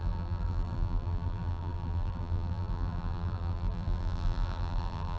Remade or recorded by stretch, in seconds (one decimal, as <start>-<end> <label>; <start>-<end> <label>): 0.0-5.2 remade